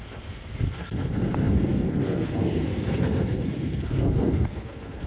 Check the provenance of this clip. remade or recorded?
remade